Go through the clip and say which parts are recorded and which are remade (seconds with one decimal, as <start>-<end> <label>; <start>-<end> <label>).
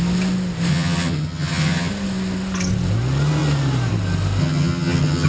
0.0-0.7 recorded; 0.7-1.9 remade; 1.9-4.4 recorded; 4.4-5.3 remade